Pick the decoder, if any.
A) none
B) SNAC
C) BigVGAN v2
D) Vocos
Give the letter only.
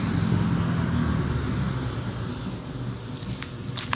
A